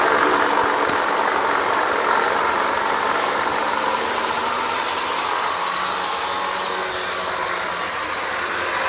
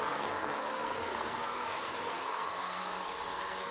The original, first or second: first